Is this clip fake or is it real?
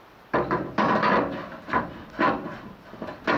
real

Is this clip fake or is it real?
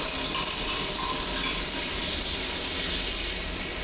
real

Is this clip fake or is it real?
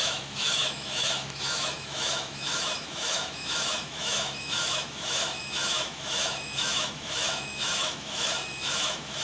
fake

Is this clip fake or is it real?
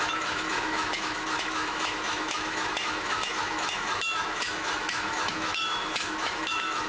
fake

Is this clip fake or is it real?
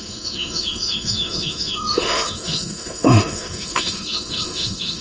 fake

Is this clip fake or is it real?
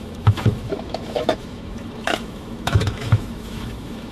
fake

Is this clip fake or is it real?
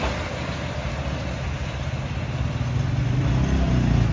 real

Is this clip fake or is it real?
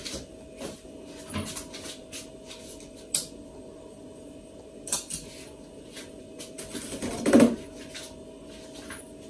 real